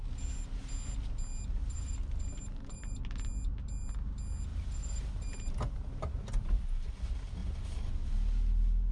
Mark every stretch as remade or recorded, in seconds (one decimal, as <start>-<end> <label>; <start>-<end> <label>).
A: 0.0-1.6 recorded; 1.6-3.0 remade; 3.0-4.5 recorded; 4.5-6.9 remade; 6.9-7.4 recorded; 7.4-7.9 remade; 7.9-8.9 recorded